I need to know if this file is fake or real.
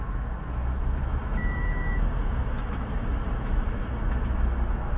fake